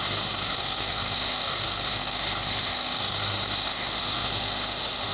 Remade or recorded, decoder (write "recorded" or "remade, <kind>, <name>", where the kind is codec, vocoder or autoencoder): remade, autoencoder, DAC-VAE